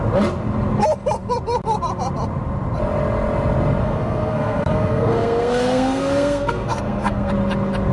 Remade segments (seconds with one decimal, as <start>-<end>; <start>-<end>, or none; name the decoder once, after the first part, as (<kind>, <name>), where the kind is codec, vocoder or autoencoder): 3.8-7.3 (codec, SNAC)

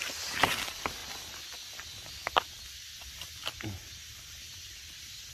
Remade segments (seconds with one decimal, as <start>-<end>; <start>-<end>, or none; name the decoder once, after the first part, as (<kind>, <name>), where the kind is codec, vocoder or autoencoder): none

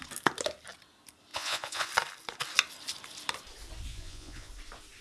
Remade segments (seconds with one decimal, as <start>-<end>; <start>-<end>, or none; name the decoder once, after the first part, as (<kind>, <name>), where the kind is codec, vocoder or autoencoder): 1.3-1.9 (vocoder, Vocos); 3.9-4.5

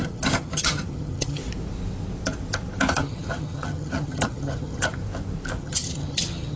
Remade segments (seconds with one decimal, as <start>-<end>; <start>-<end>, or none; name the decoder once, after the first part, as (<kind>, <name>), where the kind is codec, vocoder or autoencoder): 0.0-1.4 (vocoder, HiFi-GAN); 2.9-5.0; 5.6-6.6

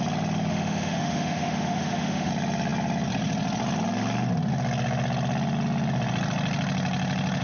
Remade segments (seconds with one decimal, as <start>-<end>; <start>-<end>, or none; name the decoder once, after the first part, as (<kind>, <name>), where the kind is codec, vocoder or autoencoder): 0.5-2.3 (autoencoder, DAC-VAE)